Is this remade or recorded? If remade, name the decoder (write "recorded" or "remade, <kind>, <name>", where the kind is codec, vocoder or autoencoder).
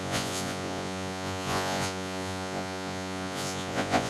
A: remade, vocoder, Vocos